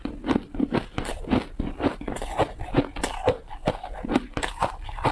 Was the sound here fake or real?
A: real